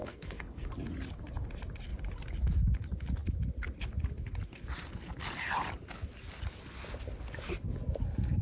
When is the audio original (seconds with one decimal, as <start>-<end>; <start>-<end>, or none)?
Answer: 0.7-8.4